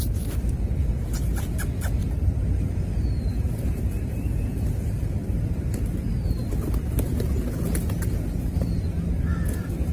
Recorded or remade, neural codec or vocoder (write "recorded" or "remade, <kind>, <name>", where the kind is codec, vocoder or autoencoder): recorded